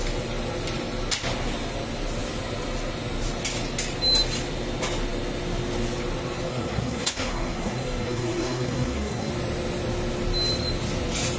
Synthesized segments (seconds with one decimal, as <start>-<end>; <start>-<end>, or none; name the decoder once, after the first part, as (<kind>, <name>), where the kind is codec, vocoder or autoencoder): 6.5-9.3 (codec, SNAC)